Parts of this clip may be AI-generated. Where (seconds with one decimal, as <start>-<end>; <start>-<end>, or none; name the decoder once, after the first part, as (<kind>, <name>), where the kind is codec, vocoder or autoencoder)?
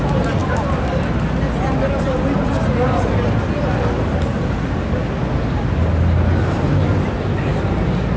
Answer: none